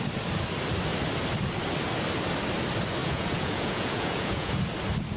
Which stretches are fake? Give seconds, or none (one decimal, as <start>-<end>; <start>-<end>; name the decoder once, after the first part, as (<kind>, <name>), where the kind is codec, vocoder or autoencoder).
3.0-4.6 (vocoder, Vocos)